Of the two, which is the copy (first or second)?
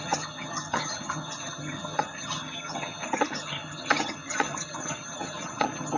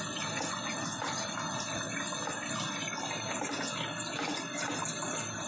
first